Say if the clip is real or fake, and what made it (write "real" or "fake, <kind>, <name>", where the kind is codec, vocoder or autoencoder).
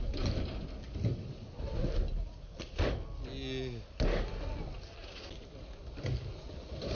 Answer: real